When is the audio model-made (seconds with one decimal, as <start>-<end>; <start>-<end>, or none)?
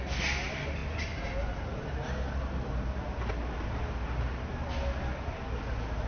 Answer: none